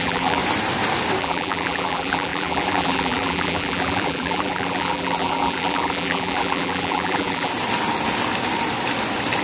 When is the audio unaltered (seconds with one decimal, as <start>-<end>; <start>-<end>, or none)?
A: 0.4-1.2; 7.5-9.4